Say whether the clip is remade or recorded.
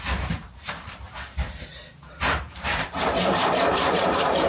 remade